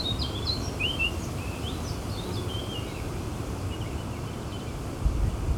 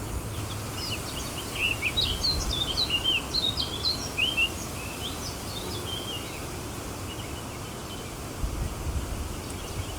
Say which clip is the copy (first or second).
first